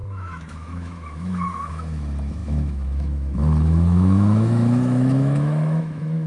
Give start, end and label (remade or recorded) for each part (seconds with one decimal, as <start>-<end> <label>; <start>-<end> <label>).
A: 0.0-6.3 remade